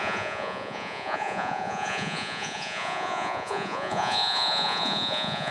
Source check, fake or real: fake